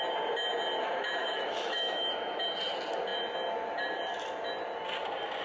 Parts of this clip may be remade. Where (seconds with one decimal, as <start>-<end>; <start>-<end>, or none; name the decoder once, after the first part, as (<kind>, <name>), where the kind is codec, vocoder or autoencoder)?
1.2-2.1 (autoencoder, DAC-VAE)